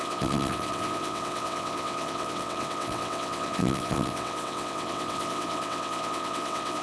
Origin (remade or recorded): remade